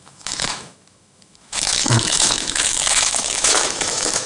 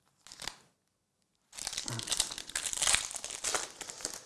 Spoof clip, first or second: first